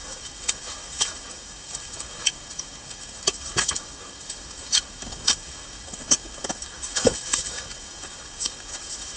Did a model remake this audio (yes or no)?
yes